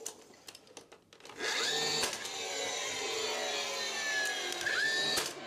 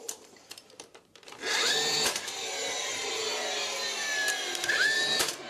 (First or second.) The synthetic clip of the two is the second